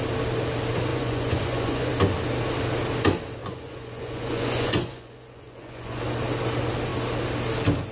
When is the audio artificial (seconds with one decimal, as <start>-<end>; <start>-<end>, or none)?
0.9-1.9; 3.4-6.0

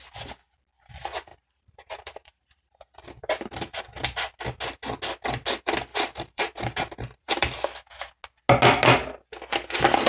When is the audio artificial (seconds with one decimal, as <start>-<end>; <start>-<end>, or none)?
1.3-3.8; 5.9-7.6

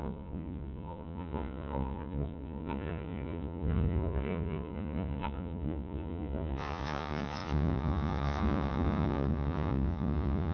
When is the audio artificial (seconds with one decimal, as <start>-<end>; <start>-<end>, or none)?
0.0-10.5